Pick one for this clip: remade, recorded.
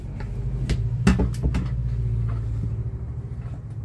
recorded